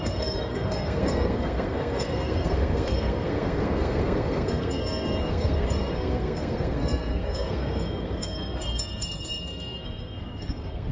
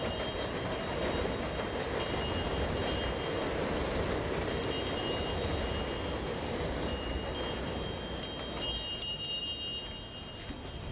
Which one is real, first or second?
second